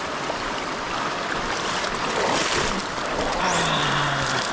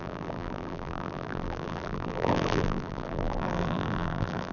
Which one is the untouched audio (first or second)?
first